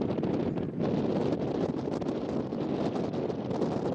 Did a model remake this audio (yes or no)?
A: no